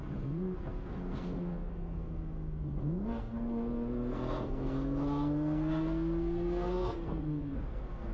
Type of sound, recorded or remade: remade